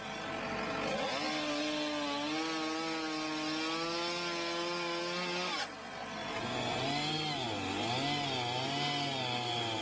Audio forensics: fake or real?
real